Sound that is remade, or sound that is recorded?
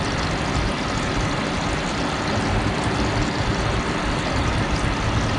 recorded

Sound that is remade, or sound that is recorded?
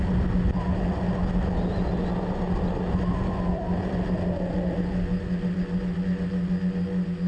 recorded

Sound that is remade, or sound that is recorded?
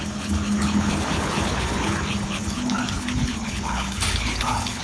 remade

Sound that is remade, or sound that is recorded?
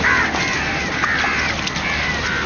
recorded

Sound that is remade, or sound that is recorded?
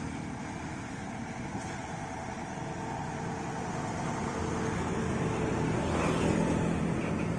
recorded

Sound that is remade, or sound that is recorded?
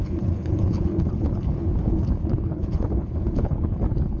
remade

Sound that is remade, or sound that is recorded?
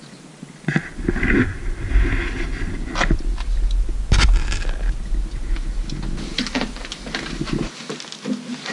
recorded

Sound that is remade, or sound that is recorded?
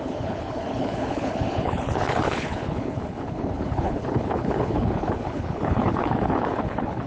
remade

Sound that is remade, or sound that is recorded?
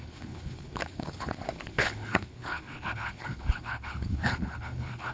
remade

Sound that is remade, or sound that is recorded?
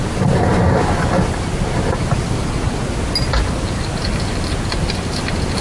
recorded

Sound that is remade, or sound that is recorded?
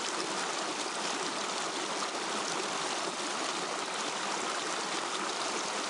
recorded